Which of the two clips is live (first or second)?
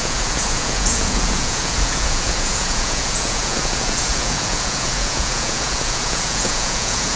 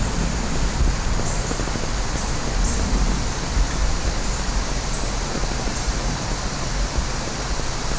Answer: second